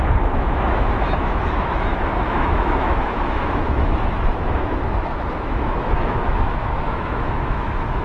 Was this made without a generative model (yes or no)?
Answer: no